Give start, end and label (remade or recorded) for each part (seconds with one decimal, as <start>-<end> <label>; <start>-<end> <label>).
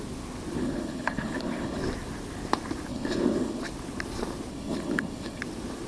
0.0-0.6 recorded; 0.6-1.8 remade; 1.8-2.9 recorded; 2.9-3.6 remade; 3.6-4.5 recorded; 4.5-5.4 remade; 5.4-5.9 recorded